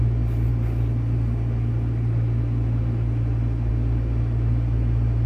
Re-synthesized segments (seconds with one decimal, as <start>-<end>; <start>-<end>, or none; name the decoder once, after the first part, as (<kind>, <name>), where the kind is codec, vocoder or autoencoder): none